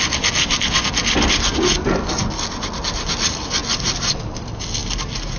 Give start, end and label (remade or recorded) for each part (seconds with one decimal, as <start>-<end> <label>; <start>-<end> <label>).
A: 0.0-5.4 recorded